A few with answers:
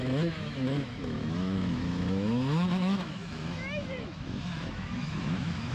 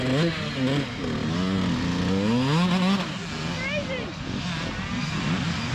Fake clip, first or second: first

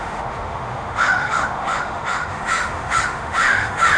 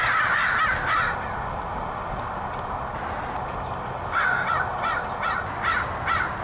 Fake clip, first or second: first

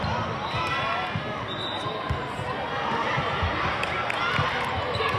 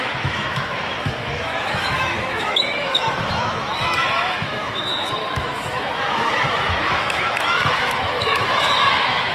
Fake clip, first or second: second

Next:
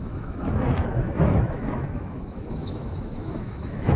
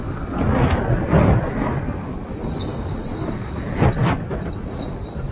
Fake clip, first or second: first